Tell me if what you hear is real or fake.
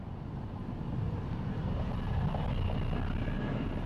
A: real